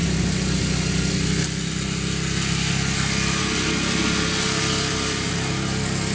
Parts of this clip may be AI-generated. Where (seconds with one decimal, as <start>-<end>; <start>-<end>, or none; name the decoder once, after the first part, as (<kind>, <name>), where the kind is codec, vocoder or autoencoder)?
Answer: none